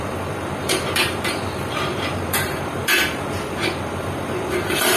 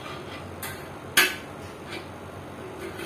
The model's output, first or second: first